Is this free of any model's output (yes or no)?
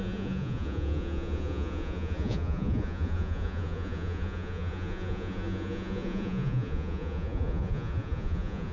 no